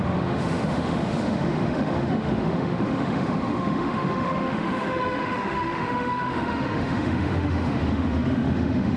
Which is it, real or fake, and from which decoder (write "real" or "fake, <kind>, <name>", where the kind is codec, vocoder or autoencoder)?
fake, autoencoder, DAC-VAE